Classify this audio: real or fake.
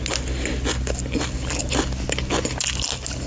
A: real